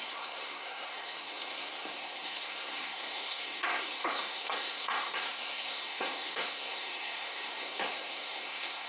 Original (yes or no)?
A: no